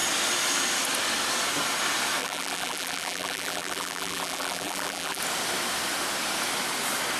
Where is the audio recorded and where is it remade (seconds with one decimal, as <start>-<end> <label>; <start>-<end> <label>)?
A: 0.0-2.2 recorded; 2.2-5.2 remade; 5.2-7.2 recorded